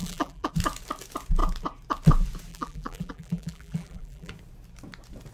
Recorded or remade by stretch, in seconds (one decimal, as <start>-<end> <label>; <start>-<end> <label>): 0.0-0.5 remade; 0.5-2.5 recorded; 2.5-4.3 remade; 4.3-5.3 recorded